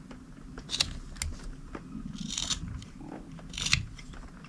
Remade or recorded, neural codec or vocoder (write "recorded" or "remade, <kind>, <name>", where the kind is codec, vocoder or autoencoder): recorded